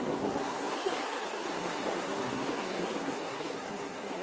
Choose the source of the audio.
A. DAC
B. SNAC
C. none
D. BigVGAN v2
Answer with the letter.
B